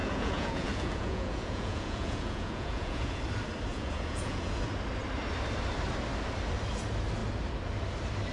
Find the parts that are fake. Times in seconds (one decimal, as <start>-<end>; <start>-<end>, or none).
0.0-3.2; 3.7-4.6